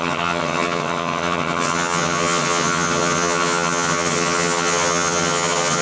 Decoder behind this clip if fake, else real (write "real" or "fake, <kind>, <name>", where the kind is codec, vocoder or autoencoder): fake, vocoder, HiFi-GAN